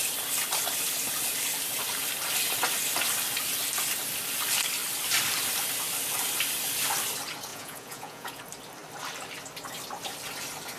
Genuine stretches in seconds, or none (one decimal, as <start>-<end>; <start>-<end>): 0.0-7.5; 8.4-10.8